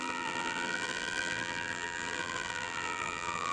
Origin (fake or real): fake